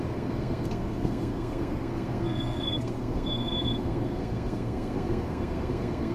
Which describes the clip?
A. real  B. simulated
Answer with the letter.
B